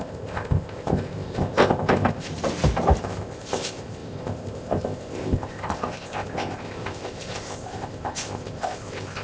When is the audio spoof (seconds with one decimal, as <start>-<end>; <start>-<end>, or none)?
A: 0.0-2.3; 3.0-9.2